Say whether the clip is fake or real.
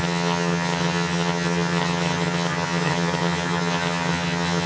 fake